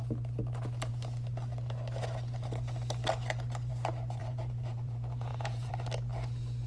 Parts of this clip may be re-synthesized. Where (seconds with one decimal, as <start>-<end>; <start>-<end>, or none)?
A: 4.2-5.7